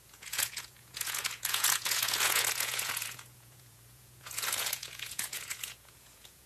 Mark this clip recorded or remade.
remade